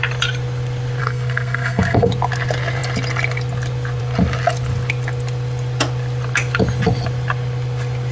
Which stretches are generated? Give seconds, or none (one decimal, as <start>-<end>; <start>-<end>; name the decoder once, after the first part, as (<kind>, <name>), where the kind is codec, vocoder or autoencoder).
1.0-2.1 (codec, SNAC)